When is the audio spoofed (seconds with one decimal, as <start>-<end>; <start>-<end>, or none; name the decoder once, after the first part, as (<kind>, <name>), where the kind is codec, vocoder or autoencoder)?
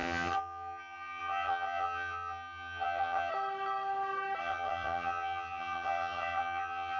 0.0-3.3 (vocoder, HiFi-GAN); 4.4-7.0